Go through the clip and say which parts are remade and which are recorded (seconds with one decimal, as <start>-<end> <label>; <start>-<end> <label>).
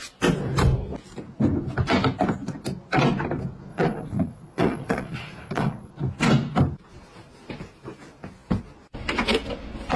0.0-3.7 recorded; 3.7-5.9 remade; 5.9-10.0 recorded